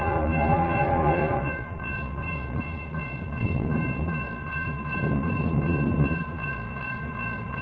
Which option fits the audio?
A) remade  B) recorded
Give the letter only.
A